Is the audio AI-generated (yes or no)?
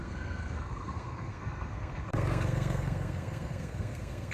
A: yes